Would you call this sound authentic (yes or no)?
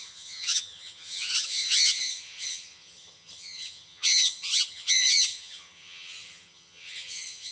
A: no